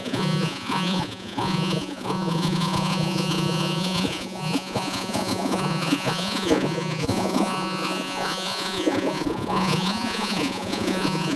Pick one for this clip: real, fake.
fake